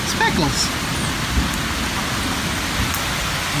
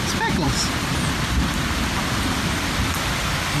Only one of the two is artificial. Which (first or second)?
second